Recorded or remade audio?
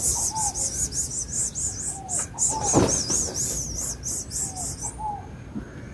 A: recorded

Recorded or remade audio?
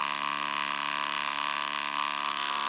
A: recorded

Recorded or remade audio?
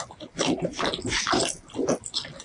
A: recorded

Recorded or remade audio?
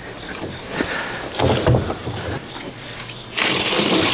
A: recorded